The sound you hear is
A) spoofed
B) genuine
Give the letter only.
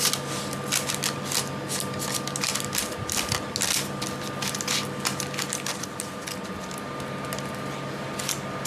B